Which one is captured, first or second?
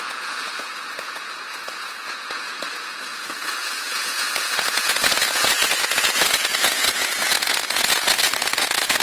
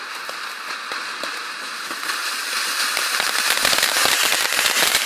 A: second